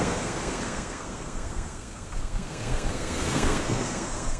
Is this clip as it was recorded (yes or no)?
no